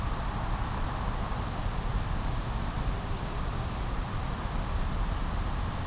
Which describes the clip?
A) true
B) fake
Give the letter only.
A